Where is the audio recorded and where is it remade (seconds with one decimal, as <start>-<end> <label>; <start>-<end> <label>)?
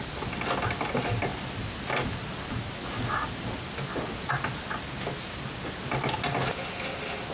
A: 0.0-7.3 recorded